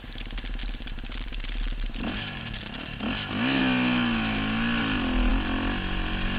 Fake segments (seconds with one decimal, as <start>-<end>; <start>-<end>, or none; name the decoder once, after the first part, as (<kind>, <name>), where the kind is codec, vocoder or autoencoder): 0.6-3.0 (vocoder, BigVGAN v2)